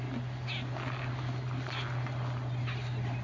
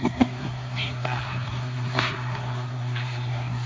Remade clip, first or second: second